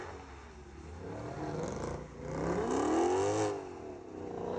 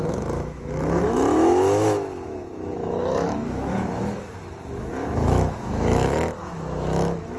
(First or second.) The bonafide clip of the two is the first